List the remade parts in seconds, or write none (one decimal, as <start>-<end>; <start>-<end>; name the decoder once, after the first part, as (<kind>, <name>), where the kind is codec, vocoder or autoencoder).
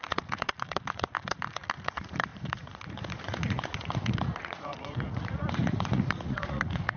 0.0-7.0 (vocoder, Vocos)